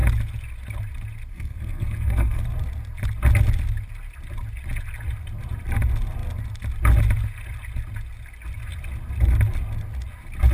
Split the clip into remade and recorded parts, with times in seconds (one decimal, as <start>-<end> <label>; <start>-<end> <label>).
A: 0.0-1.3 recorded; 1.3-2.4 remade; 2.4-10.5 recorded